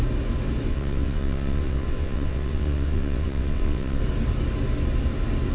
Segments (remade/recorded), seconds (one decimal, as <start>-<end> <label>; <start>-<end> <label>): 0.0-0.7 recorded; 0.7-4.0 remade; 4.0-5.5 recorded